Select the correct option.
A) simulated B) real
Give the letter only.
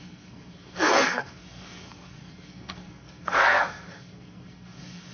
A